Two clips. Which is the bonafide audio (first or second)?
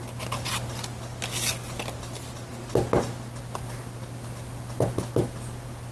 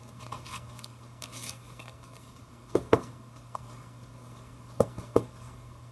first